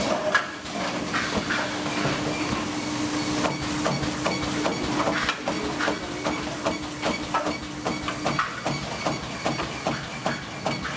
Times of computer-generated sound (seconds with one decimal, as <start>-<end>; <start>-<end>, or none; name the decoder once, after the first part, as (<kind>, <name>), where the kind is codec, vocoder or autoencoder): none